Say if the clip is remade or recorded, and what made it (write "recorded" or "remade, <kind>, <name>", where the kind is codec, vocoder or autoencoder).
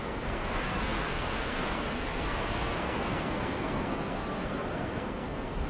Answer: remade, codec, SNAC